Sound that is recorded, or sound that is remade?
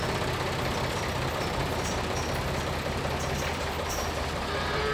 remade